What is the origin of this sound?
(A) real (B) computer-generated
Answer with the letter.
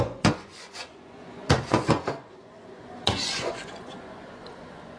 B